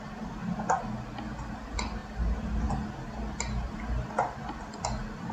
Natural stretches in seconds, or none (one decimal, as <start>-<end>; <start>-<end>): 0.0-5.3